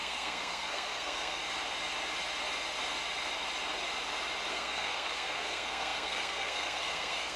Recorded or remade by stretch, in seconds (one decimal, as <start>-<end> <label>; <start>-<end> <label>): 0.0-1.4 remade; 1.4-4.5 recorded; 4.5-7.4 remade